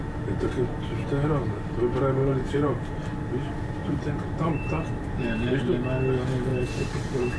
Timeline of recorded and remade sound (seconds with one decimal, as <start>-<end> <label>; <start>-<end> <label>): 0.0-2.2 recorded; 2.2-3.2 remade; 3.2-3.8 recorded; 3.8-5.6 remade; 5.6-6.5 recorded; 6.5-7.4 remade